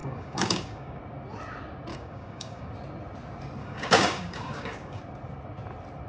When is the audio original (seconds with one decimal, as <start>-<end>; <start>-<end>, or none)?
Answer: 1.0-1.9; 2.7-3.6; 5.0-6.1